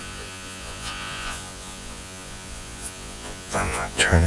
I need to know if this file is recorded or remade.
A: remade